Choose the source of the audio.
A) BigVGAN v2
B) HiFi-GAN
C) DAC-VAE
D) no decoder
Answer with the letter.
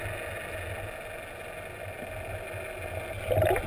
D